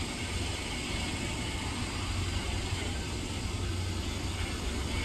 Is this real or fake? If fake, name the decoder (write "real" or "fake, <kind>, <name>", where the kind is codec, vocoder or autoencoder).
real